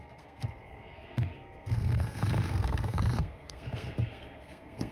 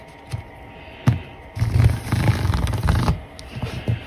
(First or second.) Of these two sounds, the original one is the second